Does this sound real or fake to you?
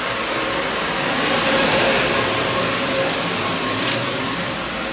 real